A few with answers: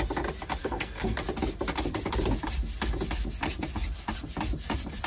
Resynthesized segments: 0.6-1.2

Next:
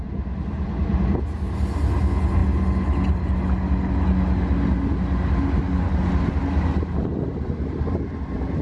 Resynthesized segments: none

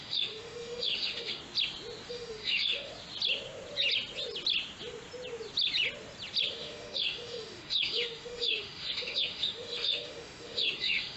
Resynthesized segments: 0.0-1.4; 2.1-2.9; 6.5-11.2

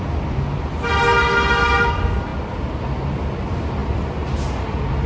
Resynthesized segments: none

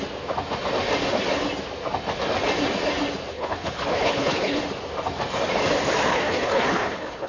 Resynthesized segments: 3.3-4.6; 6.1-7.3

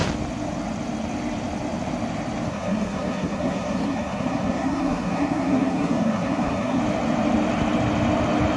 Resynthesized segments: 2.5-6.8

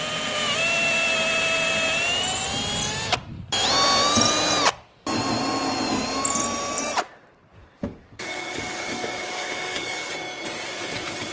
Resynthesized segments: 7.6-10.1